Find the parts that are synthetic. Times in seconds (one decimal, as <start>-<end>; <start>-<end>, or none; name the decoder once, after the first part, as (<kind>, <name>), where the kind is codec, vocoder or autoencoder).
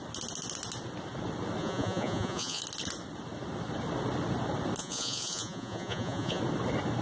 1.6-2.6 (vocoder, Vocos); 4.8-6.4